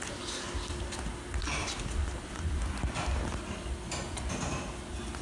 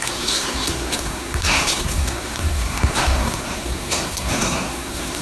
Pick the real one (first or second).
first